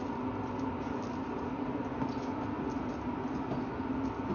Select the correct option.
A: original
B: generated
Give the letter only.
A